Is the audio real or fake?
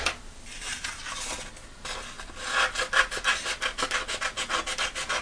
real